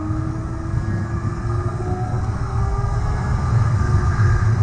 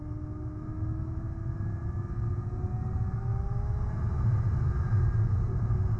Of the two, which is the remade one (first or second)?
first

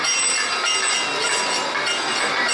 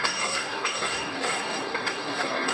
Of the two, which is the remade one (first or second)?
second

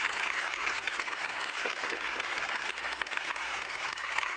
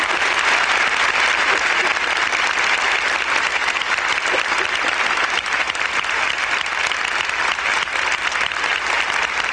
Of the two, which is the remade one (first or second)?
first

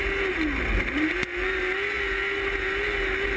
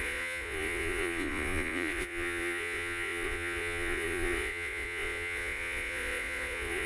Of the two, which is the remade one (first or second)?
second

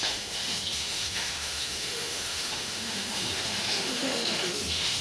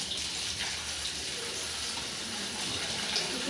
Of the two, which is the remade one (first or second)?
first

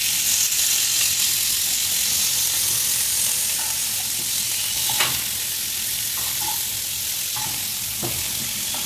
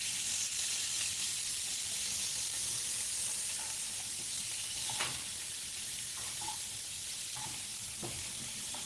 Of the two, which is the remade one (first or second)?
second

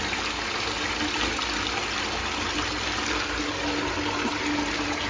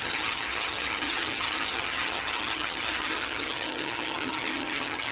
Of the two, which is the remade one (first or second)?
second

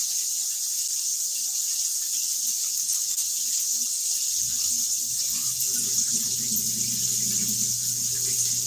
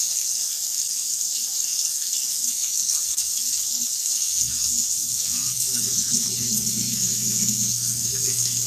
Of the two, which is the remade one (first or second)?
second